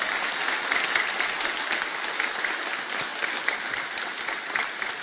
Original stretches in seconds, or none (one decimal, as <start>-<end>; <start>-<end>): 0.0-5.0